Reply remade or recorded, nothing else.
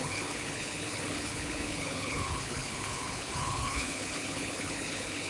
remade